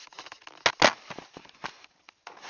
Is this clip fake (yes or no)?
no